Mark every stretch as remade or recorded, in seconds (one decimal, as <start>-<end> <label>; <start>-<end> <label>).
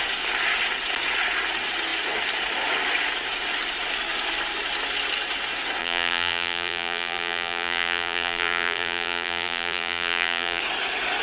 0.0-5.8 recorded; 5.8-10.6 remade; 10.6-11.2 recorded